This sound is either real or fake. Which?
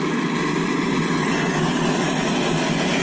real